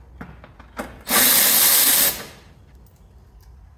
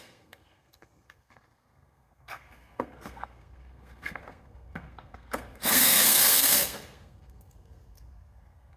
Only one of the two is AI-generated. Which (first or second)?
second